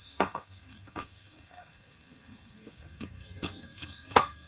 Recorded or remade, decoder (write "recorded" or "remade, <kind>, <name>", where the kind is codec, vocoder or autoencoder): remade, codec, SNAC